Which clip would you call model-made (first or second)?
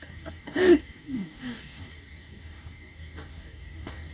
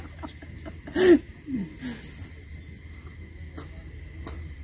first